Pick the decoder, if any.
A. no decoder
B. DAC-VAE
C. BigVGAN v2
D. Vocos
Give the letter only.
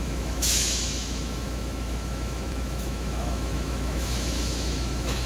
B